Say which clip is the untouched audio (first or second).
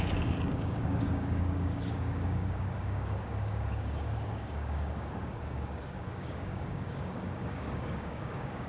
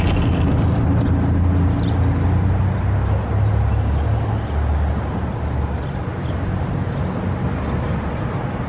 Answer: second